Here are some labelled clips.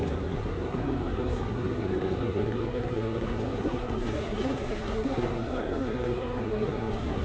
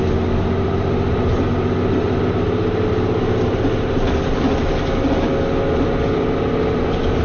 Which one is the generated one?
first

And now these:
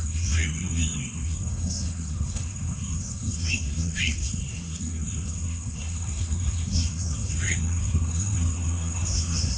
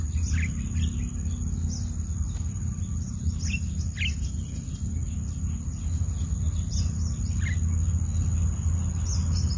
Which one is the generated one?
first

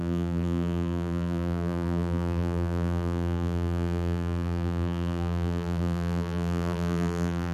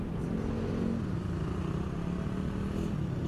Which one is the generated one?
first